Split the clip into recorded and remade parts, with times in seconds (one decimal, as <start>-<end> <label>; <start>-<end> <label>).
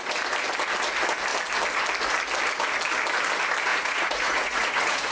0.0-3.7 recorded; 3.7-5.1 remade